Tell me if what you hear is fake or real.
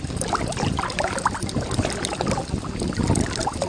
real